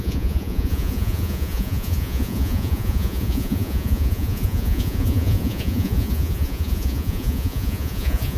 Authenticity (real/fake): fake